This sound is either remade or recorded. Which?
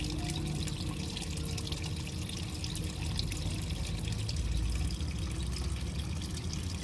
recorded